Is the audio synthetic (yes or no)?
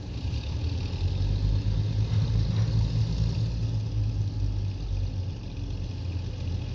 no